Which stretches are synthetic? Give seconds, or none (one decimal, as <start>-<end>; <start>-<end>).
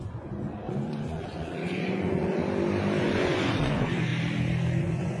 0.0-2.4; 3.0-4.1; 4.8-5.2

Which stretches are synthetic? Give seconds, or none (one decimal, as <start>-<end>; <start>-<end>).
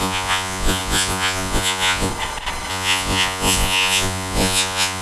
0.0-2.1; 2.7-5.0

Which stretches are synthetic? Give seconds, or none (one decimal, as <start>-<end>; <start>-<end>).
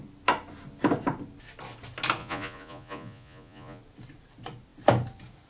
2.2-3.8